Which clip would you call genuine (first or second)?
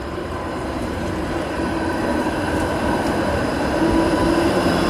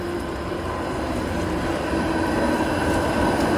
second